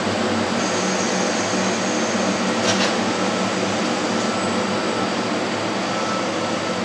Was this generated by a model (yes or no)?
no